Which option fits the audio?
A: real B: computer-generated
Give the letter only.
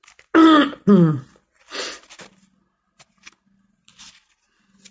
A